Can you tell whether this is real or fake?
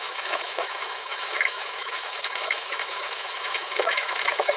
fake